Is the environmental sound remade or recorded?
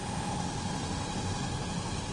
recorded